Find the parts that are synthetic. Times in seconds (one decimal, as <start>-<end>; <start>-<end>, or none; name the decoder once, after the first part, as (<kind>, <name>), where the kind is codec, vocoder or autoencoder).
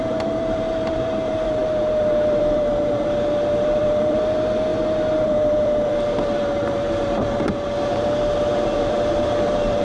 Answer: 0.0-9.8 (vocoder, BigVGAN v2)